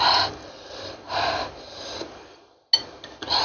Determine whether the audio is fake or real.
real